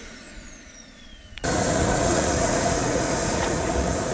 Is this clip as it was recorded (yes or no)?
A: no